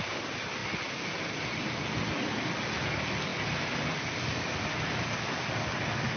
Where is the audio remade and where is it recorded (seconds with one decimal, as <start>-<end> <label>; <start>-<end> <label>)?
0.0-6.2 recorded